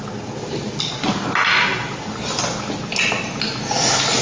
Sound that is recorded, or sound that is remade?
recorded